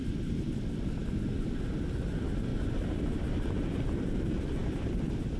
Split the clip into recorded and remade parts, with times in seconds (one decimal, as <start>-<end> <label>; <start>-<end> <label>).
0.0-5.4 recorded